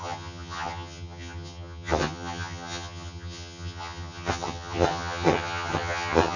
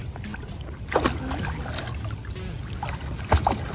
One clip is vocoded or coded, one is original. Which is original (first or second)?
second